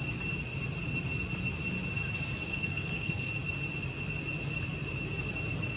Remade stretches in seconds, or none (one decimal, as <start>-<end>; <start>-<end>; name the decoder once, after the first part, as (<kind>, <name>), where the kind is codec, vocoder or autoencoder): 2.5-3.3 (codec, SNAC)